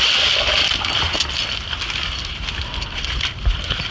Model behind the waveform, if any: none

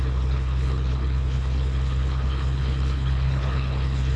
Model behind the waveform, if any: codec, HILCodec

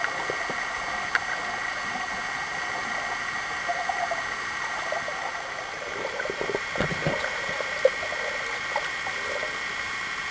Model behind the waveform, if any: none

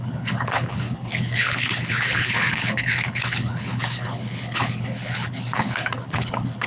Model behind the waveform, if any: codec, HILCodec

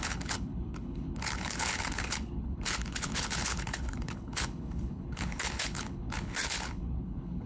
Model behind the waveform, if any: codec, HILCodec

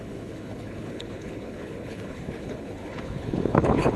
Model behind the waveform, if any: codec, HILCodec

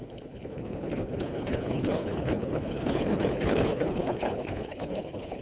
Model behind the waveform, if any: codec, HILCodec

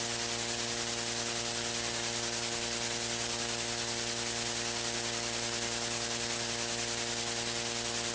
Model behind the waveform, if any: none